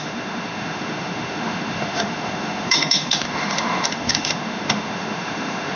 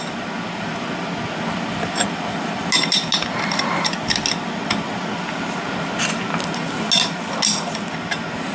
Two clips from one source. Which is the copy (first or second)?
first